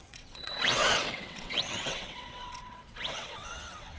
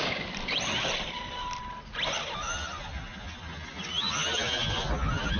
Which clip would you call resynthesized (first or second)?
first